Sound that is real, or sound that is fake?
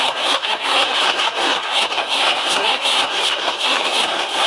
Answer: fake